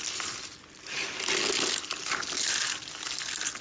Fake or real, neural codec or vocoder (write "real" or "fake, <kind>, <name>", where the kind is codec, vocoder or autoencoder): real